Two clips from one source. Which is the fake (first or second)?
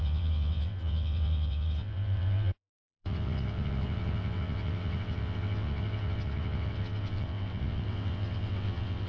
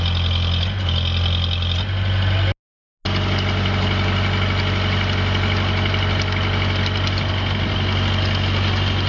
first